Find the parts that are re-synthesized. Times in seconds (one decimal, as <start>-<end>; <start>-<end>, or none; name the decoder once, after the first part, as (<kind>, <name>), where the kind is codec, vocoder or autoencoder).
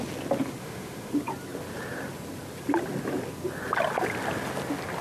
0.6-1.1 (autoencoder, DAC-VAE)